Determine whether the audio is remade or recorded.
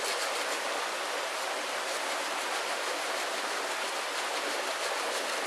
recorded